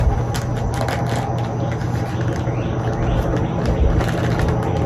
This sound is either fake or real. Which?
real